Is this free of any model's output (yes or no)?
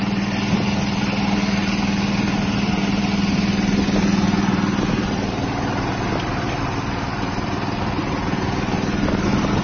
yes